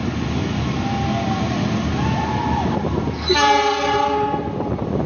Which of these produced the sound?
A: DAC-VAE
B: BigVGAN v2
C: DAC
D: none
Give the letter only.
D